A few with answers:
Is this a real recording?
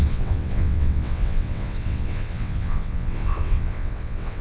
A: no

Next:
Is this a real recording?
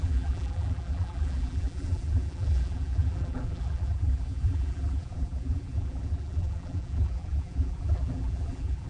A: no